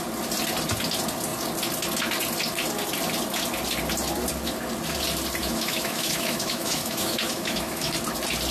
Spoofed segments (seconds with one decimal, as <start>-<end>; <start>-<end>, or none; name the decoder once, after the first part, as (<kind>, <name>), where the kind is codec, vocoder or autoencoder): 5.4-7.9 (autoencoder, DAC-VAE)